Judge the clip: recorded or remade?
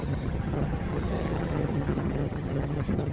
remade